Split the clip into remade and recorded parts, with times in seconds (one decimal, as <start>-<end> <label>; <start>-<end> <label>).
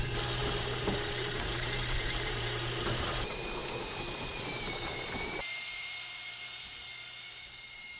0.0-8.0 remade